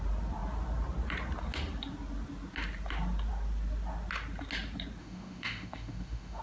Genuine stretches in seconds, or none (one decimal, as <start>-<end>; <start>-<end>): 0.0-5.0